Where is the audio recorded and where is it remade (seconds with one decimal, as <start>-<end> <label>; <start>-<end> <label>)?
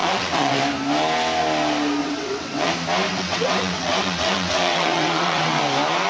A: 0.0-0.6 remade; 0.6-2.0 recorded; 2.0-2.7 remade; 2.7-3.1 recorded; 3.1-5.6 remade; 5.6-6.1 recorded